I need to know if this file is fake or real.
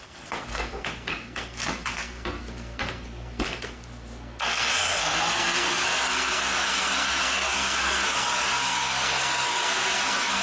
fake